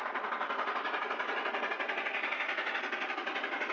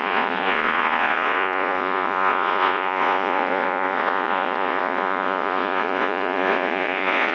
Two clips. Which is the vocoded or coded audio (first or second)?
second